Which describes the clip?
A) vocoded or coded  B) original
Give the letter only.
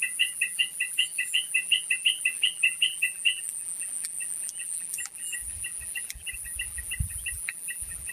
A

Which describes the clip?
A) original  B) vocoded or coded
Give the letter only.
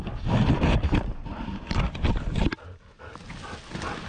A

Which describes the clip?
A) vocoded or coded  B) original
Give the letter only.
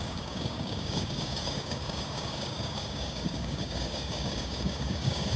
A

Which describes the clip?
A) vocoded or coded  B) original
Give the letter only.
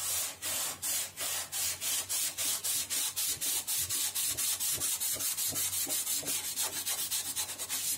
B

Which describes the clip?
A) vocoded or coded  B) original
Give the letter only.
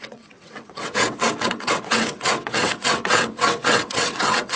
A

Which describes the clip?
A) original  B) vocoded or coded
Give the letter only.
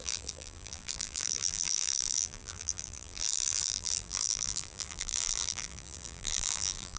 B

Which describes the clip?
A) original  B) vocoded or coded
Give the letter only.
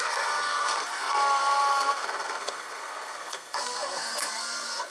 B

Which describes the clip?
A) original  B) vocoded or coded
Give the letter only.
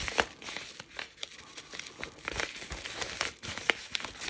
A